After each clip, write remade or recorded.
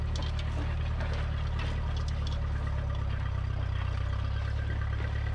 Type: recorded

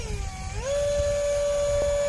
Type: recorded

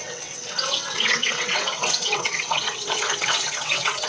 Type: remade